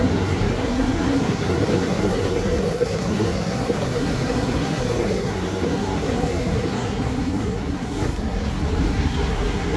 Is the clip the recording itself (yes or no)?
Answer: no